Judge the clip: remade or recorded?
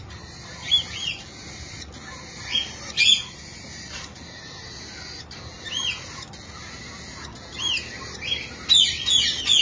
recorded